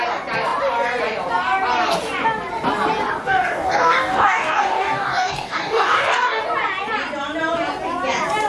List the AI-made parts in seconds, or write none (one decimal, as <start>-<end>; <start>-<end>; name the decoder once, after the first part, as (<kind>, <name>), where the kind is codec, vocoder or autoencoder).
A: 3.2-6.4 (codec, DAC)